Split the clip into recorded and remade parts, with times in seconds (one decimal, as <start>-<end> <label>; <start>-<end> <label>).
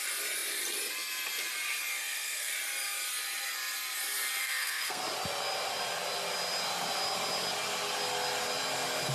0.0-1.9 recorded; 1.9-2.5 remade; 2.5-4.4 recorded; 4.4-5.0 remade; 5.0-9.1 recorded